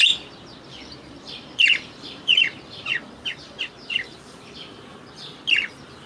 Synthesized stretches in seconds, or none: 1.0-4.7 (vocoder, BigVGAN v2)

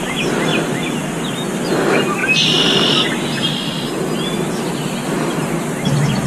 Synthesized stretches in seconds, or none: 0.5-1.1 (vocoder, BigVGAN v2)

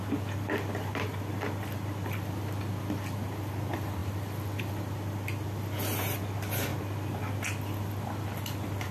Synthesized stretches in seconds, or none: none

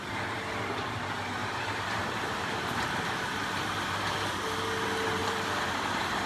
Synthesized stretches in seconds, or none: 1.4-4.0 (vocoder, BigVGAN v2); 5.2-6.3

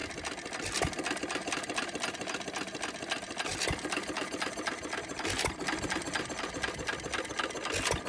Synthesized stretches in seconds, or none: none

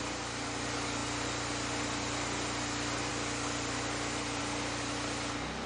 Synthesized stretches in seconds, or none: none

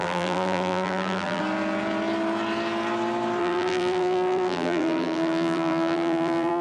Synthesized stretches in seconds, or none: 0.0-1.4 (vocoder, BigVGAN v2); 3.4-6.6

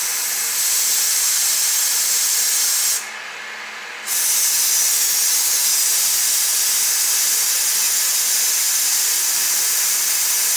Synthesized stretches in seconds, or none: none